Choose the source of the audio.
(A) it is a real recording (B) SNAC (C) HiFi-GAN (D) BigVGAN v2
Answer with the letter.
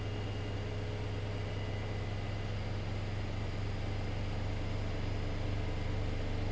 A